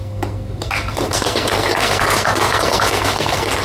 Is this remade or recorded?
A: remade